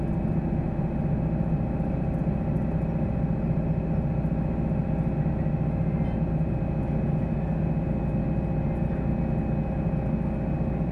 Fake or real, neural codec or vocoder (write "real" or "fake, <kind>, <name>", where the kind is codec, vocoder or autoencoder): real